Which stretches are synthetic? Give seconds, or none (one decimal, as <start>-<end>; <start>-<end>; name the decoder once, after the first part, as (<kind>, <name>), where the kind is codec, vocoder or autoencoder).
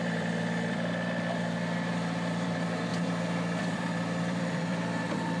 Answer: 0.0-2.9 (vocoder, BigVGAN v2); 3.6-5.4